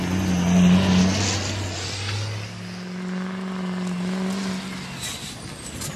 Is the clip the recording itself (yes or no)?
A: yes